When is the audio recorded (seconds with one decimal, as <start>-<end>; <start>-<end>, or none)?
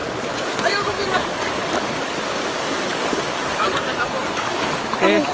2.0-2.5